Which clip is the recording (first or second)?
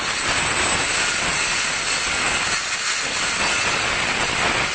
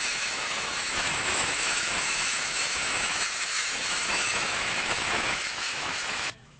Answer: first